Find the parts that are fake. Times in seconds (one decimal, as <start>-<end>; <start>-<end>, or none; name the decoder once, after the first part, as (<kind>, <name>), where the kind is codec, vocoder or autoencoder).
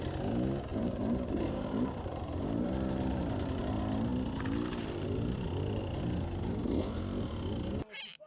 0.7-3.2 (vocoder, BigVGAN v2)